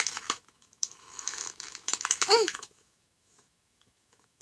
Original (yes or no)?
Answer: no